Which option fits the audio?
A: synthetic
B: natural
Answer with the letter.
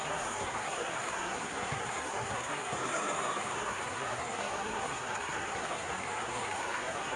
A